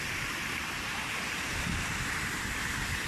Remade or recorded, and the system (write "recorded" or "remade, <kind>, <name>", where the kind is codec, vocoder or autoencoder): remade, vocoder, BigVGAN v2